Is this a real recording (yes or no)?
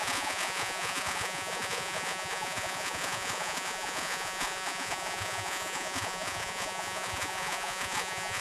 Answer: no